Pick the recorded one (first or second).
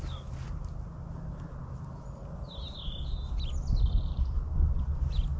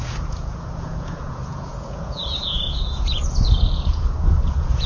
first